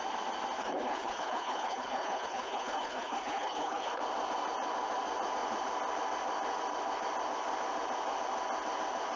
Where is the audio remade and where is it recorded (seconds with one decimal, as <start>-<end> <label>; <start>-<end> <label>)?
0.0-0.6 recorded; 0.6-4.0 remade; 4.0-9.2 recorded